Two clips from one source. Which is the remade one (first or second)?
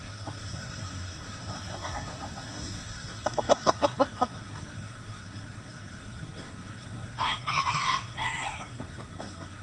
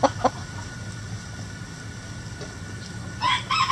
first